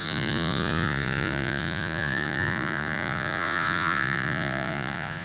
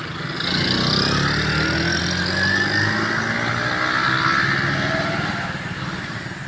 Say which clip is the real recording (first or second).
second